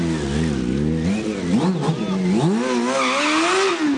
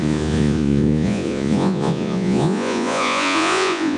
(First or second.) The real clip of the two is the first